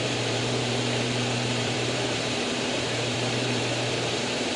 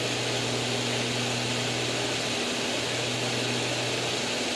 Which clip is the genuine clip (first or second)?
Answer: second